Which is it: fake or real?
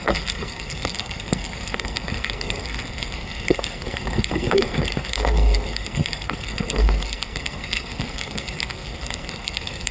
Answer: fake